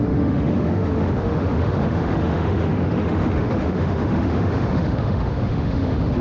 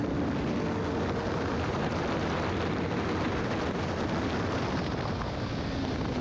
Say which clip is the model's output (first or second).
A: first